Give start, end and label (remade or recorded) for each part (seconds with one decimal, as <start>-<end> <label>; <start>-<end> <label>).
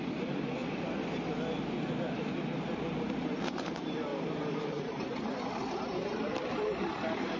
0.0-0.6 remade; 0.6-3.0 recorded; 3.0-7.4 remade